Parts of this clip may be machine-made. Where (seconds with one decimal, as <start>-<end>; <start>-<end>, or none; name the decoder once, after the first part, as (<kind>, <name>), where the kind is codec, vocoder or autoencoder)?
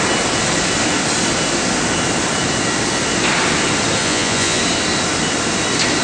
4.0-4.6 (vocoder, Vocos)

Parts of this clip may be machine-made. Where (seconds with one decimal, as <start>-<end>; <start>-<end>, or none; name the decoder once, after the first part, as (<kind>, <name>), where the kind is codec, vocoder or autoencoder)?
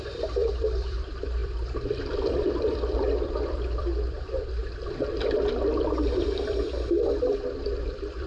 0.0-4.6 (vocoder, BigVGAN v2); 5.8-8.3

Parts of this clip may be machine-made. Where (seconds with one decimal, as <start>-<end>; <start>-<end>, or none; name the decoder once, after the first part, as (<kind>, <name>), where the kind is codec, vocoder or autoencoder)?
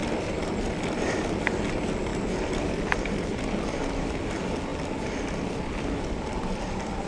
none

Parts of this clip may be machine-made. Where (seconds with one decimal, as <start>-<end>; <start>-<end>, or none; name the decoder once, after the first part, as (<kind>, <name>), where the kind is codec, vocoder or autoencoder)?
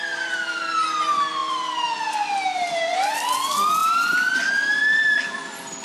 1.4-3.1 (vocoder, BigVGAN v2)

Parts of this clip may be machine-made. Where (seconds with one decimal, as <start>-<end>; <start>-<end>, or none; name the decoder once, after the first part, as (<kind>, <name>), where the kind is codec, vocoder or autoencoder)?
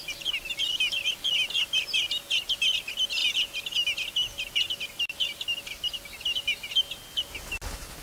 none